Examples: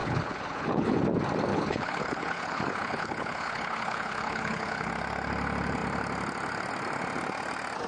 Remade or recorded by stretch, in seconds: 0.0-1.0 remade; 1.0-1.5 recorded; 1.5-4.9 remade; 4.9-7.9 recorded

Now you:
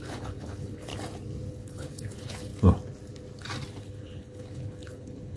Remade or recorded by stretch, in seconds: 0.0-0.9 remade; 0.9-1.5 recorded; 1.5-2.5 remade; 2.5-3.8 recorded; 3.8-5.4 remade

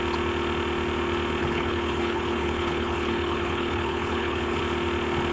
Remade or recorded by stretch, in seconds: 0.0-1.4 recorded; 1.4-4.6 remade; 4.6-5.3 recorded

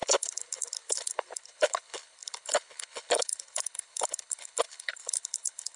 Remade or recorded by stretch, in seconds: 0.0-5.8 remade